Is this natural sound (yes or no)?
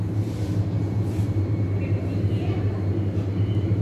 no